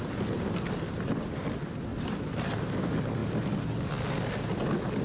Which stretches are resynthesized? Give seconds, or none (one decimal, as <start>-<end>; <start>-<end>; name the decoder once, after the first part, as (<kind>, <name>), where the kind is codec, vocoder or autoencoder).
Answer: none